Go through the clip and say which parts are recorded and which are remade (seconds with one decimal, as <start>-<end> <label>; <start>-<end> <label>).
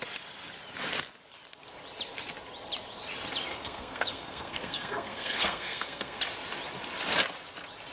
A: 0.0-3.5 recorded; 3.5-6.2 remade; 6.2-7.9 recorded